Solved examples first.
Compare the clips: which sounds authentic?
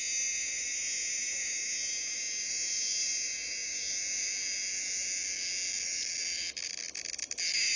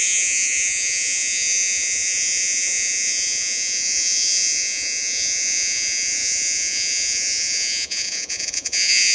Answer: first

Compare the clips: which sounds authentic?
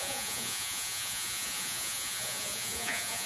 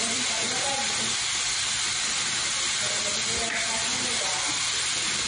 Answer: second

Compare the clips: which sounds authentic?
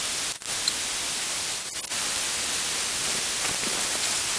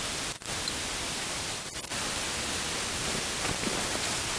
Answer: first